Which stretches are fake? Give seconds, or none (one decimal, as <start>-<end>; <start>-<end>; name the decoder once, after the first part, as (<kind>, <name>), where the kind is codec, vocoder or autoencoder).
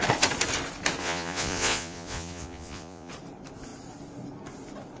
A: 1.0-3.1 (vocoder, Vocos)